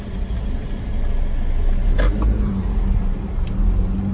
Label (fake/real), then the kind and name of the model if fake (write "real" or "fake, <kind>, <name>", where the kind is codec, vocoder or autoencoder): real